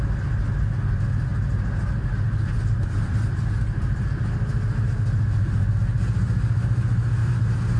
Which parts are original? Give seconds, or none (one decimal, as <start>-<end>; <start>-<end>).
0.0-7.2